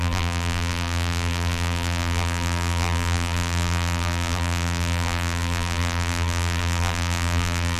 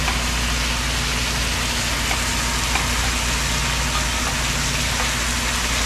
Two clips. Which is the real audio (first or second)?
second